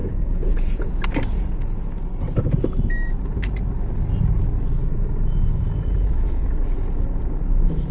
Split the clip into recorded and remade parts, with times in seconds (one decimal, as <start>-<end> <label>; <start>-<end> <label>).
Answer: 0.0-0.9 remade; 0.9-7.9 recorded